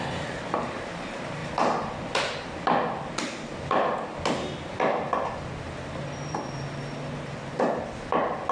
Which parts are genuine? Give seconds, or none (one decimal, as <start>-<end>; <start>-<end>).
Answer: 0.0-8.5